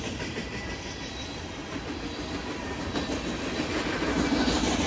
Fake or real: real